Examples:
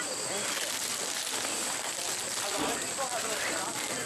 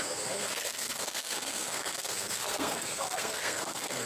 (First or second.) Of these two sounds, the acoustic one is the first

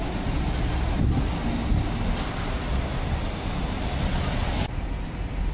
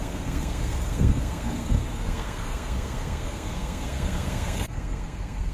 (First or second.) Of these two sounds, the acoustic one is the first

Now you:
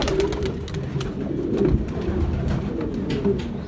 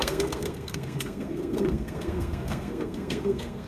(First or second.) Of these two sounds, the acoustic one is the first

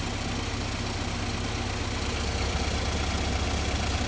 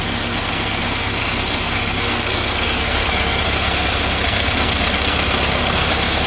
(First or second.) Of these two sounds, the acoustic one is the first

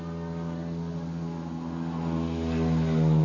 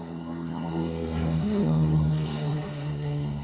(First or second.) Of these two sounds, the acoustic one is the first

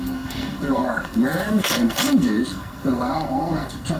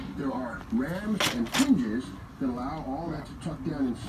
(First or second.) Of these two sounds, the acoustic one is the second